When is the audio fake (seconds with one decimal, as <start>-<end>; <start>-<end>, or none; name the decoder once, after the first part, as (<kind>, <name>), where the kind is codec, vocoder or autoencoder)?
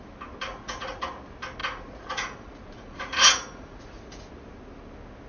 0.5-1.0 (vocoder, Vocos); 1.6-4.3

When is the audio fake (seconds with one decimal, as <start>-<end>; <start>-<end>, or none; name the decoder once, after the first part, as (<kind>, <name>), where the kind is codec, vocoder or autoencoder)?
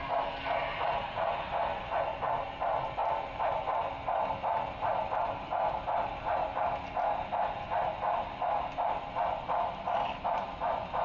0.7-1.3 (vocoder, Vocos)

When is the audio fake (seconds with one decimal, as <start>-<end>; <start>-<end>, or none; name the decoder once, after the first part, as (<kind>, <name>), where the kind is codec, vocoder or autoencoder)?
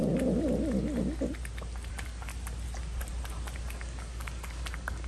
1.9-2.3 (codec, DAC); 3.6-5.1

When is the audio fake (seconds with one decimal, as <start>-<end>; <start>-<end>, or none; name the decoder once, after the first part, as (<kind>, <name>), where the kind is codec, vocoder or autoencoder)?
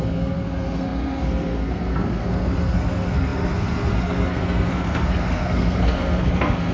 0.0-6.7 (codec, SNAC)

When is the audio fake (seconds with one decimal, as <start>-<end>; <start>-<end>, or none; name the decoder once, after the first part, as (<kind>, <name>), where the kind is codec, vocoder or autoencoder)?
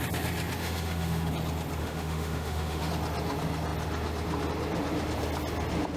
0.6-1.3 (autoencoder, DAC-VAE); 1.8-2.9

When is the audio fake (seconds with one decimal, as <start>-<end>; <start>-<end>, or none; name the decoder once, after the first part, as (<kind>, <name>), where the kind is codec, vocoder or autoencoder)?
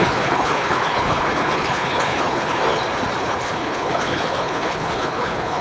0.0-2.6 (codec, HILCodec); 3.2-5.6